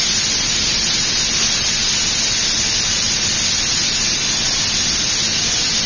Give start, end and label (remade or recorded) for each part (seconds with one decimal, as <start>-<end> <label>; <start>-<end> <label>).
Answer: 0.0-5.9 recorded

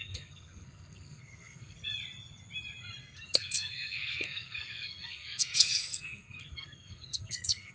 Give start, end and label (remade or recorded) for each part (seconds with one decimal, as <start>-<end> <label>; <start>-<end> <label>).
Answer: 0.0-1.9 remade; 1.9-3.0 recorded; 3.0-7.7 remade

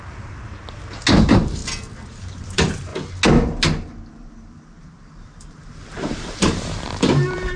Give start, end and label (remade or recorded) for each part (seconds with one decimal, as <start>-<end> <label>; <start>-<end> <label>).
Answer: 0.0-0.6 remade; 0.6-1.2 recorded; 1.2-1.6 remade; 1.6-2.1 recorded; 2.1-2.9 remade; 2.9-5.1 recorded; 5.1-7.6 remade

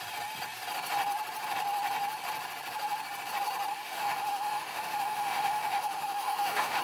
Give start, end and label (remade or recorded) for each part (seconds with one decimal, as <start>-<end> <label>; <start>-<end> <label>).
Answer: 0.0-3.7 recorded; 3.7-6.8 remade